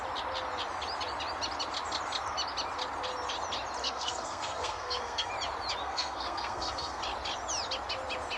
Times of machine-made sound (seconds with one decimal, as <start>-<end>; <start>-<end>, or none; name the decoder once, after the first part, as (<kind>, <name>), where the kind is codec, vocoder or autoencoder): 3.8-5.3 (codec, SNAC); 5.8-7.0